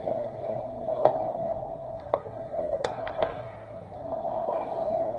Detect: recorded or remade remade